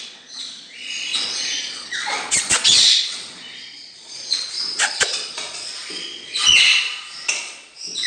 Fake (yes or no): yes